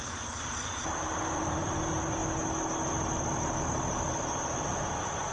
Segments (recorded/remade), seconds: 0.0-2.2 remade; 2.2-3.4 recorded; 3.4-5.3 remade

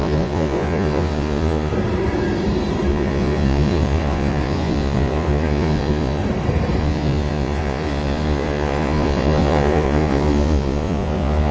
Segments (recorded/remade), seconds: 0.0-1.7 remade; 1.7-2.9 recorded; 2.9-6.2 remade; 6.2-6.8 recorded; 6.8-11.5 remade

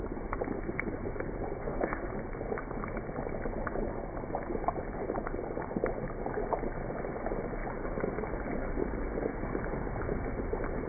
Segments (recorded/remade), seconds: 0.0-1.6 recorded; 1.6-2.1 remade; 2.1-10.9 recorded